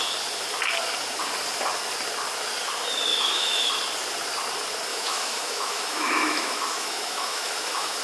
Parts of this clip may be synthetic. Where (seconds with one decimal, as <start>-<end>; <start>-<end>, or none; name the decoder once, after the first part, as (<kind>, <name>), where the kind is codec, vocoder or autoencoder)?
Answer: 3.1-3.7 (autoencoder, DAC-VAE); 4.9-8.0